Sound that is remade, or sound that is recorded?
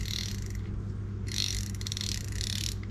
recorded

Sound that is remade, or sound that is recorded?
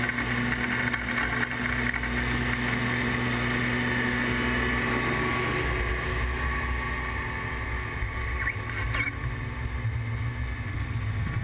recorded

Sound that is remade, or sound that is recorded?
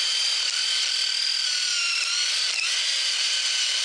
recorded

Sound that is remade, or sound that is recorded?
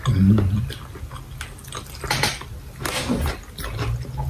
recorded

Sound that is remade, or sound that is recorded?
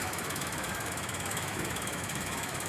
remade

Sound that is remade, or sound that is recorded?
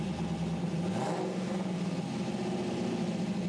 recorded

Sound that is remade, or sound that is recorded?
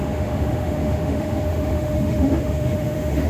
remade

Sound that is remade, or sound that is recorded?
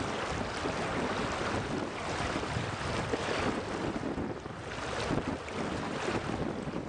recorded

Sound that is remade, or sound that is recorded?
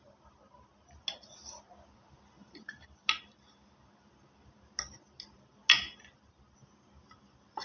recorded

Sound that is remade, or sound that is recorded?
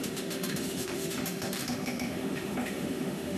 remade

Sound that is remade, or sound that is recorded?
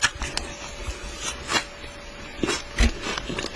recorded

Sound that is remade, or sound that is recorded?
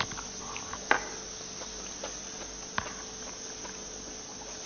recorded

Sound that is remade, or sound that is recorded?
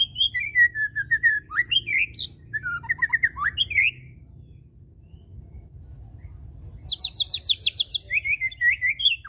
recorded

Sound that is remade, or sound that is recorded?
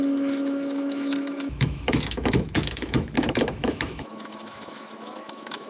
remade